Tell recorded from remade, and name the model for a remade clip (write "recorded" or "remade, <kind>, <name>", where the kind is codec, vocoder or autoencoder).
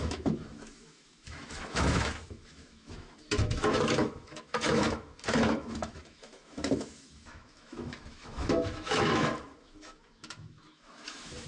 remade, autoencoder, DAC-VAE